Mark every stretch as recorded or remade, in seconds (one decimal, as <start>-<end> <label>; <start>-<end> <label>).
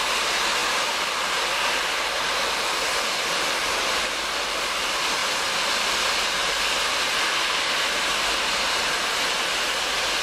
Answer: 0.0-10.2 recorded